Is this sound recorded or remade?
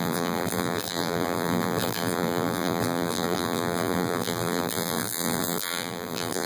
remade